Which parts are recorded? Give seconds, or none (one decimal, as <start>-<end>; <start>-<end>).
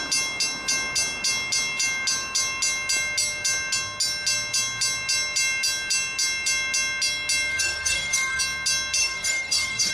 0.0-7.5; 8.4-9.0